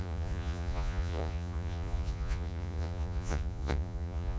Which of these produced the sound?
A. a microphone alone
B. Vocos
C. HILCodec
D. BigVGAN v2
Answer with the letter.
B